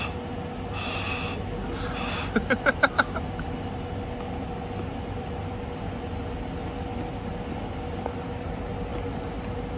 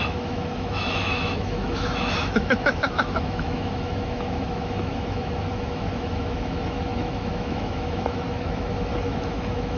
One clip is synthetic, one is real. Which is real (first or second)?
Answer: first